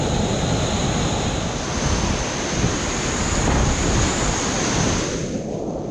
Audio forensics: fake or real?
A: real